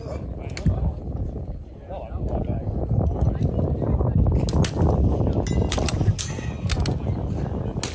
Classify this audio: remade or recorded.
recorded